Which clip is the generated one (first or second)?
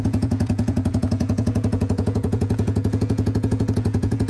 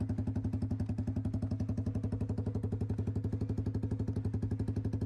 first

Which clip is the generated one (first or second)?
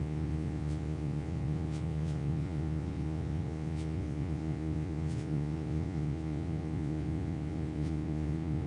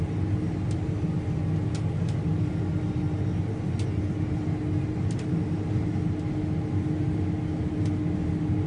first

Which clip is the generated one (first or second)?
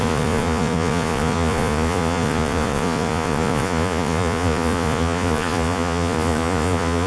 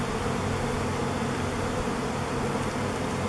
first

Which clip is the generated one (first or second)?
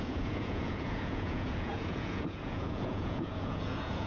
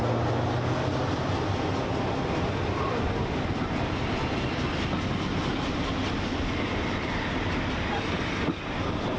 first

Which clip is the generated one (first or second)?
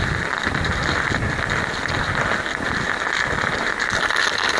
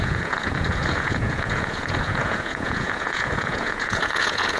second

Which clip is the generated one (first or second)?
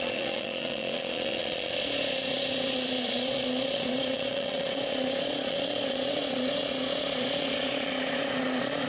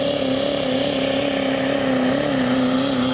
first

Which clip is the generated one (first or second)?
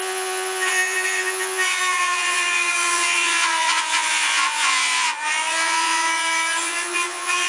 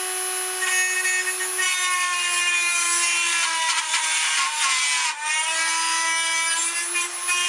first